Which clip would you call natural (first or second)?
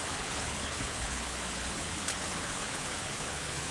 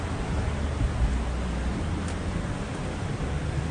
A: second